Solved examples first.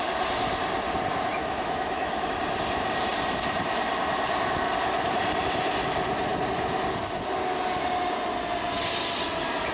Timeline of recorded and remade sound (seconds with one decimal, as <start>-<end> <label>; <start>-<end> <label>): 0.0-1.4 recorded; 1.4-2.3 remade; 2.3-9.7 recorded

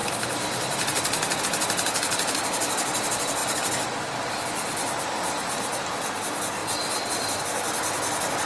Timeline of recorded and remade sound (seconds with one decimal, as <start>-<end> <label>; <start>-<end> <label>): 0.0-1.4 remade; 1.4-6.6 recorded; 6.6-7.4 remade; 7.4-8.5 recorded

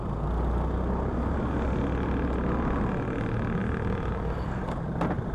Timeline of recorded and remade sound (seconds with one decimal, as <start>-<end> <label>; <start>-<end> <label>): 0.0-5.3 recorded

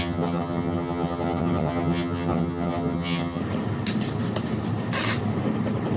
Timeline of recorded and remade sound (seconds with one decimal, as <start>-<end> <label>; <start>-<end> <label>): 0.0-3.4 remade; 3.4-6.0 recorded

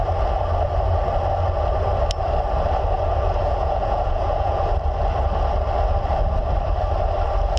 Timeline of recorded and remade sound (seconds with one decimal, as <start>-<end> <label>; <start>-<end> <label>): 0.0-3.4 recorded; 3.4-4.7 remade; 4.7-7.6 recorded